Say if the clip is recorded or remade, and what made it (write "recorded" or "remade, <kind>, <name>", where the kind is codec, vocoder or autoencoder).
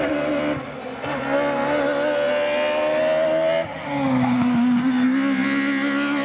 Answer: recorded